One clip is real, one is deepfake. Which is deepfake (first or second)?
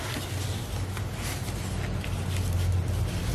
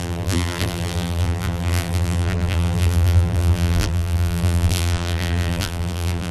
second